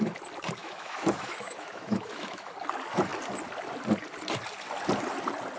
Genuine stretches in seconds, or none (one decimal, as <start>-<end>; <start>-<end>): 0.0-0.6; 2.5-5.6